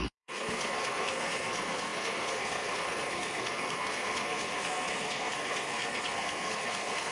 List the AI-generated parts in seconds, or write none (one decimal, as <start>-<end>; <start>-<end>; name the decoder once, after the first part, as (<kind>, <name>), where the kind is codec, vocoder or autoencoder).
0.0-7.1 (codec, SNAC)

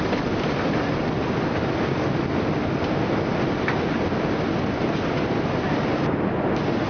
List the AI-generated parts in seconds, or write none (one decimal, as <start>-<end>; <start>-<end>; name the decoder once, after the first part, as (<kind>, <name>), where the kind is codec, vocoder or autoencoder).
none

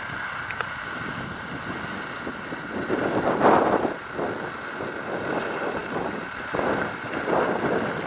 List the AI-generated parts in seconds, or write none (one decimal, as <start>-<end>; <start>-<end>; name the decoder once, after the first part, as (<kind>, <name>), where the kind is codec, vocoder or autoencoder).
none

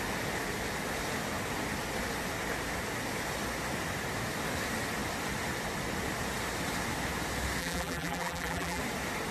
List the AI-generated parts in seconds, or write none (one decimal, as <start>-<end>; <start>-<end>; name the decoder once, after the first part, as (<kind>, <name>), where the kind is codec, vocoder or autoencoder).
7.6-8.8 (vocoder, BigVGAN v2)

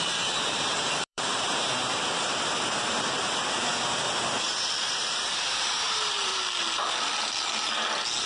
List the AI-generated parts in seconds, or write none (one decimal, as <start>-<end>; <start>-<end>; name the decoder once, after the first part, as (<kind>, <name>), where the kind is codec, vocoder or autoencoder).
0.0-3.7 (vocoder, BigVGAN v2); 4.8-6.3

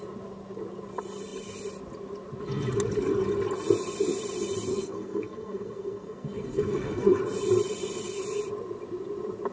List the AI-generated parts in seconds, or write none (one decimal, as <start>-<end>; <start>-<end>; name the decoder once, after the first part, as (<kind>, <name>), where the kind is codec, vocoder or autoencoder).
4.7-7.2 (codec, SNAC)

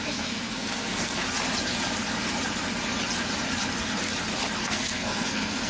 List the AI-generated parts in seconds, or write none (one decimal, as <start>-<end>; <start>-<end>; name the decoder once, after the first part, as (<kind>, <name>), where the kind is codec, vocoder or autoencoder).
0.0-1.2 (codec, SNAC); 4.6-5.7

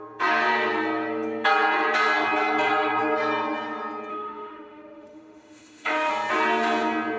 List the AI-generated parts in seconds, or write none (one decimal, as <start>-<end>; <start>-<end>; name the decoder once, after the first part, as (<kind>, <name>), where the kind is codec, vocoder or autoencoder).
4.1-6.1 (autoencoder, DAC-VAE)